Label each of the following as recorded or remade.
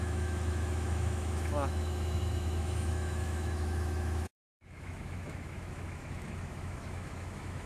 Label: remade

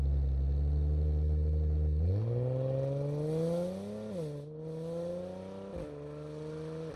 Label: recorded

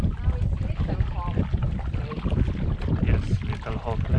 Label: recorded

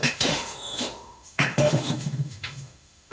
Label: remade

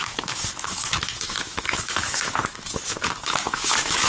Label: remade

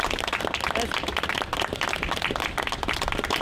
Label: recorded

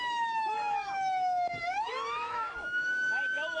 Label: remade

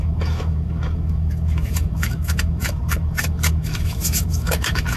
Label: remade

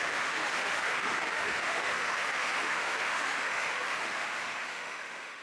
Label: remade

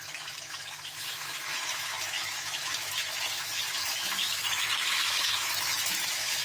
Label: remade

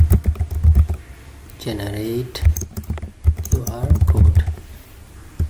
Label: recorded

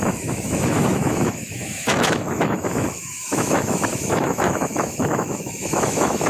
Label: remade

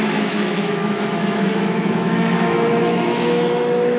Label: remade